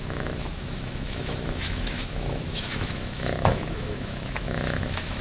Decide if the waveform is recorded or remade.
remade